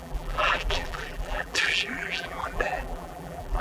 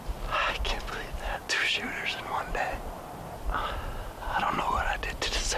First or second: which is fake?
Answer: first